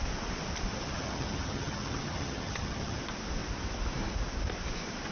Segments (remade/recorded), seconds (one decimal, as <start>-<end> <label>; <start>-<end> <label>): 0.0-0.7 recorded; 0.7-3.0 remade; 3.0-5.1 recorded